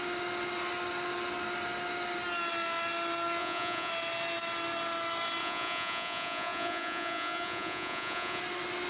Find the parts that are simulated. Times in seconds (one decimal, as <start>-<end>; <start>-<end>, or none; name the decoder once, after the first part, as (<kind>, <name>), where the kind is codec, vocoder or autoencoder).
3.4-3.9 (vocoder, Vocos); 5.4-8.4